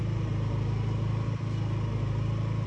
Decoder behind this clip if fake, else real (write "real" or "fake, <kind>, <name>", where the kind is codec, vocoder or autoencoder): real